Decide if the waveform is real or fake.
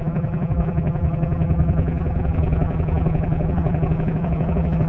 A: fake